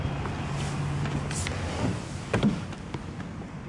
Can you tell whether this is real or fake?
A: real